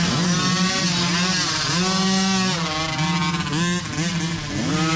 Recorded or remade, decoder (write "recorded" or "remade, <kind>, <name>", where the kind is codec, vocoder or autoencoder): recorded